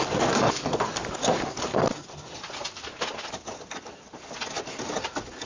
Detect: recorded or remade recorded